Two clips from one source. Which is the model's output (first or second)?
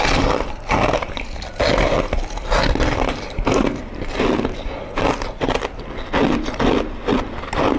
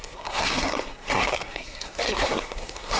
second